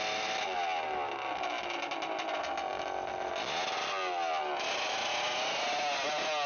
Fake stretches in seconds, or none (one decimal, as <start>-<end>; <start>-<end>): none